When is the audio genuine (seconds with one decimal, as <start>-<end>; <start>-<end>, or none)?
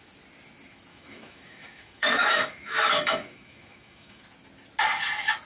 0.0-0.9; 4.2-5.5